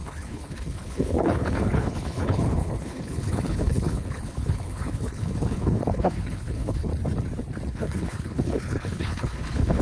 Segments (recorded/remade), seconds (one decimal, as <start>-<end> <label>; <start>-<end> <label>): 0.0-6.9 remade; 6.9-7.7 recorded; 7.7-9.8 remade